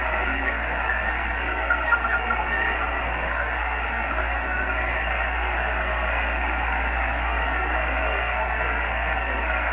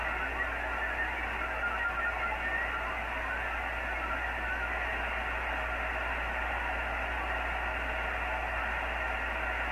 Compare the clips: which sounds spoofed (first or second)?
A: first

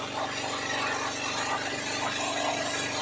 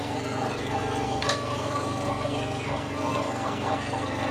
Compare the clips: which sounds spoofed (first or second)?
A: second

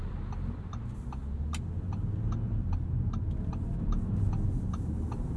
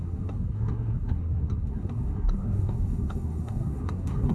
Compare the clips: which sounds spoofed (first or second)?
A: second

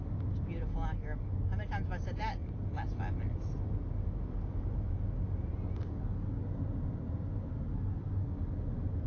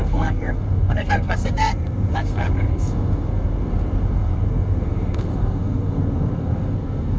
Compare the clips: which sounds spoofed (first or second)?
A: second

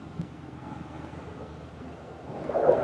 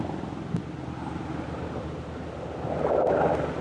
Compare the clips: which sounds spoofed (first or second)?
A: first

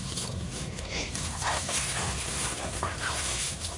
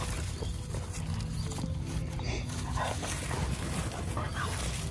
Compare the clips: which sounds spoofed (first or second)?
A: first